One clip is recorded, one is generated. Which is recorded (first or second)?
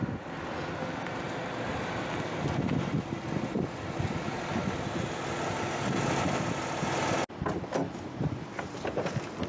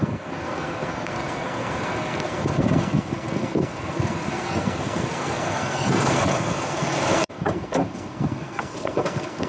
first